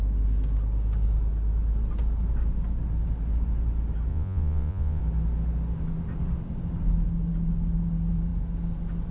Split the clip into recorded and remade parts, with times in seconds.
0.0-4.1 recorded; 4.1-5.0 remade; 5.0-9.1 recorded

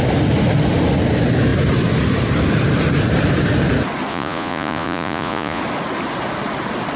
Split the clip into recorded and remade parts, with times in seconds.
0.0-4.1 recorded; 4.1-5.6 remade; 5.6-7.0 recorded

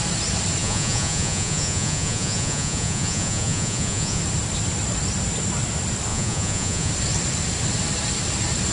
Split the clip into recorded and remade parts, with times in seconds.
0.0-0.6 recorded; 0.6-4.2 remade; 4.2-6.1 recorded; 6.1-6.9 remade; 6.9-8.7 recorded

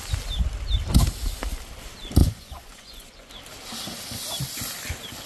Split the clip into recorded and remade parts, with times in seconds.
0.0-2.2 recorded; 2.2-3.3 remade; 3.3-5.3 recorded

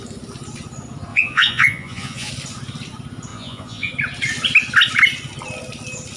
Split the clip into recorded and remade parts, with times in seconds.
0.0-1.1 recorded; 1.1-2.3 remade; 2.3-3.3 recorded; 3.3-3.9 remade; 3.9-6.2 recorded

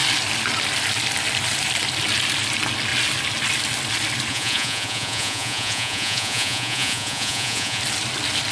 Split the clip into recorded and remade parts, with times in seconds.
0.0-4.3 recorded; 4.3-7.8 remade; 7.8-8.5 recorded

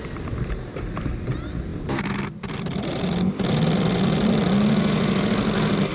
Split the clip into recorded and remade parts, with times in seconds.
0.0-5.9 recorded